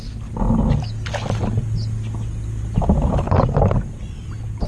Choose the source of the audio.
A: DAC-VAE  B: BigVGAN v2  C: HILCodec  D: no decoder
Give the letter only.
D